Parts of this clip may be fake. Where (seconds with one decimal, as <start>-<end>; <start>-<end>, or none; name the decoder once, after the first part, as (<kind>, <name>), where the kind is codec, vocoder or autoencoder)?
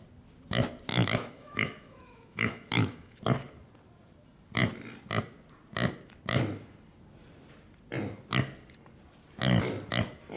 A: 0.9-3.2 (autoencoder, DAC-VAE)